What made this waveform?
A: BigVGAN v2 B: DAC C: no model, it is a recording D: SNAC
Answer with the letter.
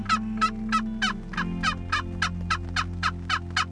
C